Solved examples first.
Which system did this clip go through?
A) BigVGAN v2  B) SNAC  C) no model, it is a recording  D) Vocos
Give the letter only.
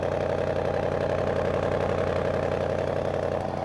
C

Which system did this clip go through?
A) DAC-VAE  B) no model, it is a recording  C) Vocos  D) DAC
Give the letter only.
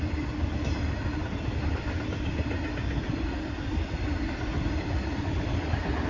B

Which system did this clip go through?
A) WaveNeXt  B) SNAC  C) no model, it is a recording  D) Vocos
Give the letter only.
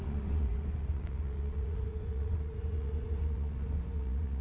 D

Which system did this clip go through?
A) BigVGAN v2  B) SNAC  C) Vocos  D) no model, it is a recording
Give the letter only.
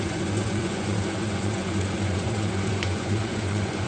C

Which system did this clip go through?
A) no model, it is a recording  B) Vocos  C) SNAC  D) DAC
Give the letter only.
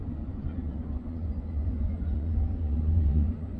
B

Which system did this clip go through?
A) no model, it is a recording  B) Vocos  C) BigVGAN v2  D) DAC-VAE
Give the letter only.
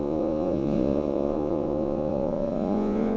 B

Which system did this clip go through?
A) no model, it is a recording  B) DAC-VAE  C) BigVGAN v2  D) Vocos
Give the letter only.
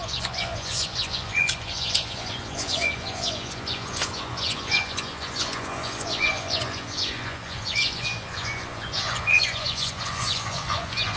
D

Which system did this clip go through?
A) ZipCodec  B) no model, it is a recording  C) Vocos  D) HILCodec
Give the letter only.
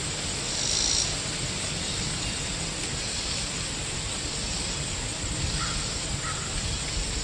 B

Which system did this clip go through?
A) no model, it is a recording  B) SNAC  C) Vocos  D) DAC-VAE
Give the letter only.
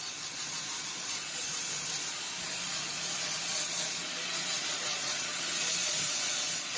C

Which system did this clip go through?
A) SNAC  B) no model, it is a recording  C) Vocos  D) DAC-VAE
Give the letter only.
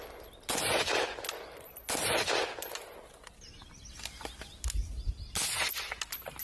B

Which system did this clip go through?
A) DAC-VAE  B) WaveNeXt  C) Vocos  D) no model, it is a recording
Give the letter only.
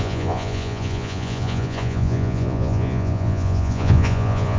C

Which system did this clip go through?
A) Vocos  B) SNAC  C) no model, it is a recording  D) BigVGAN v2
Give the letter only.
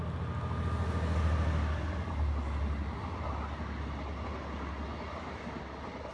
C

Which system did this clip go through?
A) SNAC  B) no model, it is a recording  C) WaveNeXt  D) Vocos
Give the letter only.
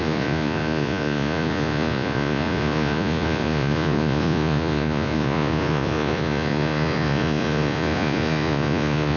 D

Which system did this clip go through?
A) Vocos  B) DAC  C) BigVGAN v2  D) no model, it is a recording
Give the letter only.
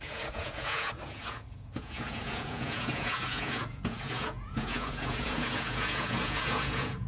A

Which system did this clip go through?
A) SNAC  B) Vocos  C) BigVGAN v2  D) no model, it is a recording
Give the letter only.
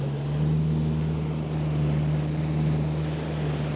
D